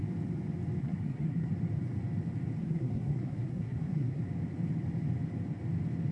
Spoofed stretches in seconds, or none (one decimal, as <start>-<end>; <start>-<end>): 0.8-1.5; 2.6-4.2